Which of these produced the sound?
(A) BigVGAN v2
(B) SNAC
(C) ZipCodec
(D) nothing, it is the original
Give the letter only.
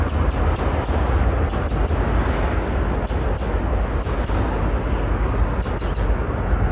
D